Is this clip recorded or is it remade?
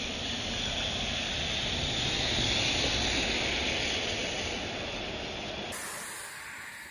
recorded